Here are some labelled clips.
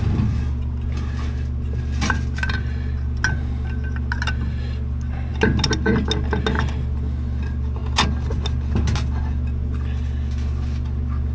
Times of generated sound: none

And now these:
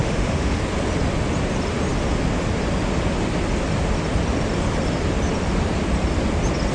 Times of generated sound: 0.0-0.6 (autoencoder, DAC-VAE)

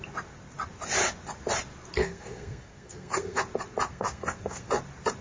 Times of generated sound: 2.0-3.4 (codec, SNAC); 3.9-4.7

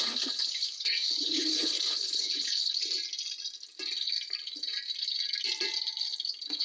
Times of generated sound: 0.0-2.8 (codec, HILCodec)

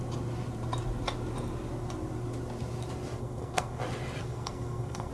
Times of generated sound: 3.2-3.8 (codec, SNAC); 4.2-5.1